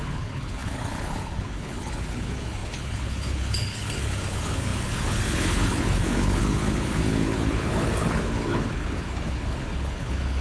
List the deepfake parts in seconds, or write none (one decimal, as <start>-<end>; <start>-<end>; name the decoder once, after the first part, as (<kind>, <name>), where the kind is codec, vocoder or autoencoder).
0.0-10.4 (codec, HILCodec)